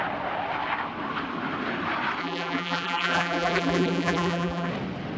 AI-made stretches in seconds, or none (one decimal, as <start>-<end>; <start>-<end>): 2.2-4.7